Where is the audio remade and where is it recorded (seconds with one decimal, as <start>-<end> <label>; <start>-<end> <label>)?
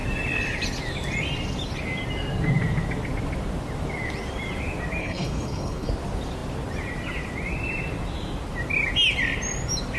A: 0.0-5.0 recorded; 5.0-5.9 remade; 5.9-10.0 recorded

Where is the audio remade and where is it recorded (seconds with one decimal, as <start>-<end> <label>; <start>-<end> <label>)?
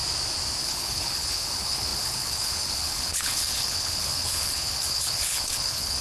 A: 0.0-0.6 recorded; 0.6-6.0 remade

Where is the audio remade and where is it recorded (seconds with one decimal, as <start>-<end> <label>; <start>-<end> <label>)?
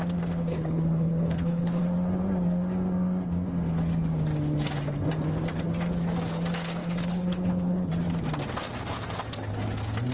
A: 0.0-0.5 recorded; 0.5-1.8 remade; 1.8-6.8 recorded; 6.8-7.9 remade; 7.9-10.1 recorded